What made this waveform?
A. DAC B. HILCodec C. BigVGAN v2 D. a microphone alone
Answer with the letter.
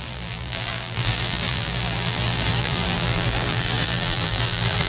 C